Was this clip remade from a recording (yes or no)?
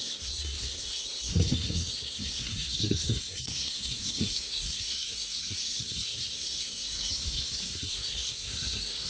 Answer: yes